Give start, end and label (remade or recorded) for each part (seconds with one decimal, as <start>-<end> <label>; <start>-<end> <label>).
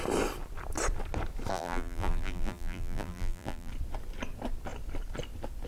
0.0-1.5 recorded; 1.5-3.7 remade; 3.7-5.7 recorded